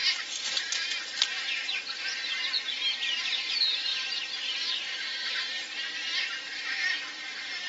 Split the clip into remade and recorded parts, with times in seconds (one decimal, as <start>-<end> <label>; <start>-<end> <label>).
0.0-3.9 recorded; 3.9-4.6 remade; 4.6-7.7 recorded